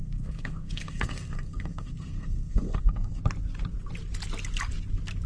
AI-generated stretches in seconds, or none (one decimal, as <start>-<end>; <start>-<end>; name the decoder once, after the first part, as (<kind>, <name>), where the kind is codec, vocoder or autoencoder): 0.0-3.2 (codec, SNAC)